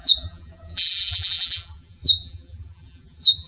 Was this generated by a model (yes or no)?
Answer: yes